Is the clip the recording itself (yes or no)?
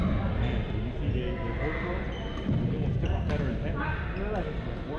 yes